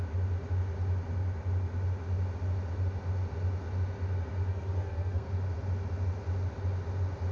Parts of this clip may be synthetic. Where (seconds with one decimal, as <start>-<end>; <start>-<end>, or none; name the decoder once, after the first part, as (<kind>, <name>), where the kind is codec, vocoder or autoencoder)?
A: 4.5-5.3 (codec, SNAC)